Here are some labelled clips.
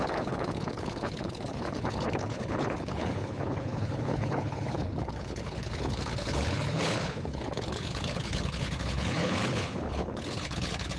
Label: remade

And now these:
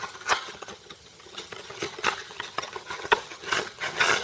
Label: remade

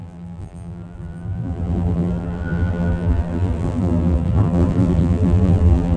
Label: remade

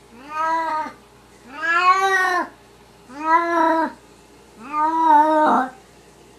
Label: recorded